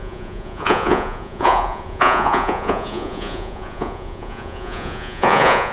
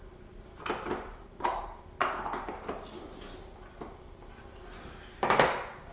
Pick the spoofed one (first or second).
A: first